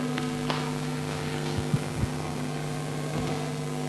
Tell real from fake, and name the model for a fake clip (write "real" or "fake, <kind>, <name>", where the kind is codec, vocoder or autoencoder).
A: fake, codec, SNAC